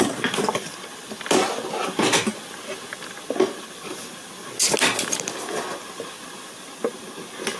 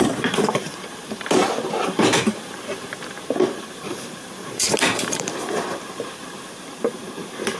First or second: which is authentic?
first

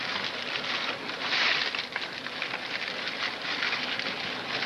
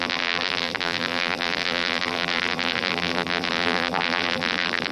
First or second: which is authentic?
first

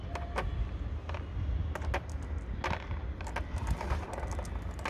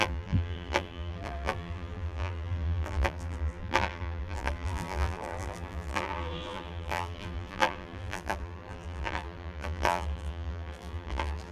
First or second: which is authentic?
first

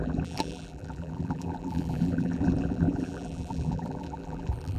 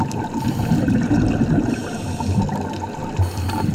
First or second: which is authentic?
second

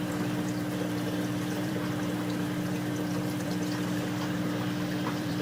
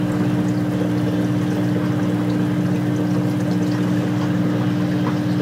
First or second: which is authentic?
second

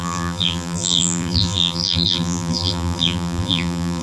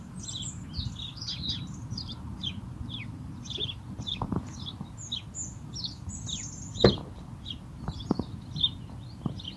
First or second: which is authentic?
second